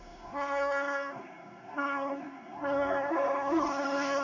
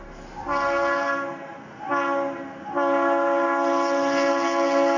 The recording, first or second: second